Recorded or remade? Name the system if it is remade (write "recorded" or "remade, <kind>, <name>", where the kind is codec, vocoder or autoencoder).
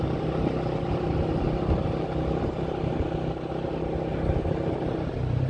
recorded